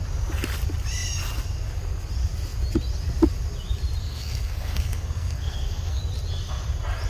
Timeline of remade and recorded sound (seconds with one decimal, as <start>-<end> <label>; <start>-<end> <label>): 0.0-4.0 recorded; 4.0-6.0 remade; 6.0-7.1 recorded